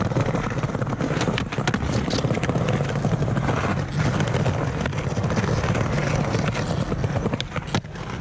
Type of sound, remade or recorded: recorded